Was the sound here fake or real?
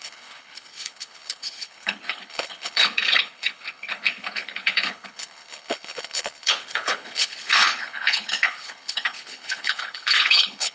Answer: fake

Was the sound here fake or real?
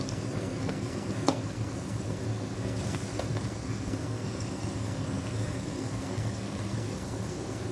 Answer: fake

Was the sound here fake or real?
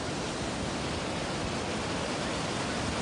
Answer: real